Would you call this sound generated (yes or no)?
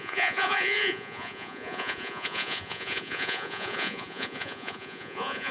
yes